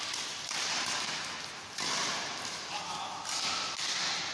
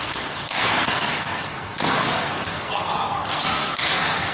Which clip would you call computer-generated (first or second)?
second